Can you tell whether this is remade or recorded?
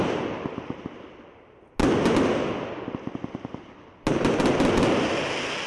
recorded